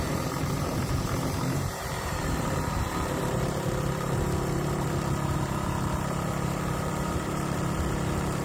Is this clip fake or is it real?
fake